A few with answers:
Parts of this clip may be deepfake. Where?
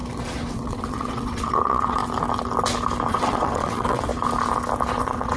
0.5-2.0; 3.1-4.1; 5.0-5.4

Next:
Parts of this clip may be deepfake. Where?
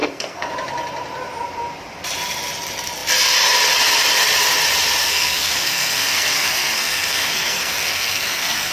0.0-0.5; 5.0-8.7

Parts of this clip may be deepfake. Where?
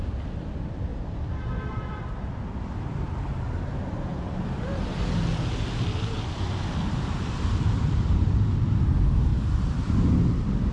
0.9-3.4; 4.1-8.3; 9.3-9.9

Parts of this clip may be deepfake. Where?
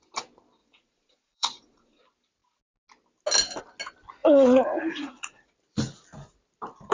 0.6-2.0; 4.2-5.5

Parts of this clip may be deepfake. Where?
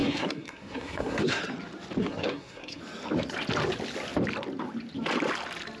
0.0-1.4; 2.0-2.8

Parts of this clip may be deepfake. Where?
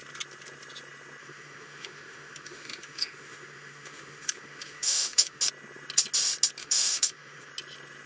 1.2-5.4; 6.6-7.5